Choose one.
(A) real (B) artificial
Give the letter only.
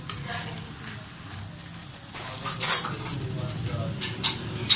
A